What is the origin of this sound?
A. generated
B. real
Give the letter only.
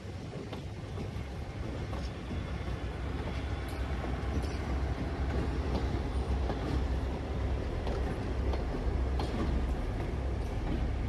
B